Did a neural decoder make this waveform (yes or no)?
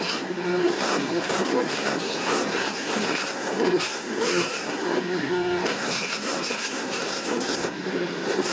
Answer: yes